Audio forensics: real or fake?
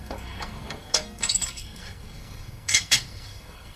fake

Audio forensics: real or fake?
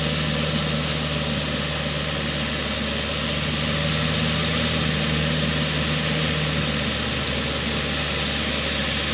real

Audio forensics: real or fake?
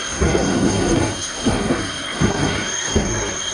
fake